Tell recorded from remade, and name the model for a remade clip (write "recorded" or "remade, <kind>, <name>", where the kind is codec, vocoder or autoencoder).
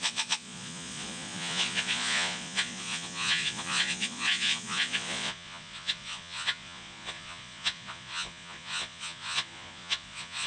remade, vocoder, Vocos